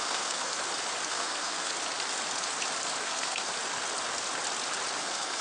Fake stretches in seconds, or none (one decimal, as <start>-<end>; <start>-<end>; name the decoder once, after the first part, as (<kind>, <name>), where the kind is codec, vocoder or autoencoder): 0.0-0.5 (codec, SNAC); 1.1-1.7; 3.0-3.5; 5.0-5.4